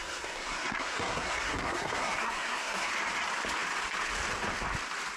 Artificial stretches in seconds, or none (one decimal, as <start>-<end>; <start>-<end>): 0.0-2.9